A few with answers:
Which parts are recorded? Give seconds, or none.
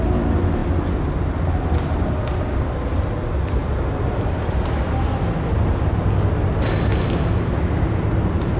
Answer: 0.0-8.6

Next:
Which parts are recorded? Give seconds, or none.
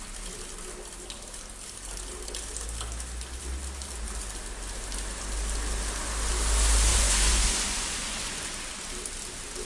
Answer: 0.0-6.9; 8.5-9.6